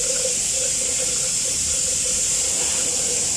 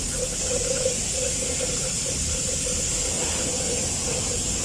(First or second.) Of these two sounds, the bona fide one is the second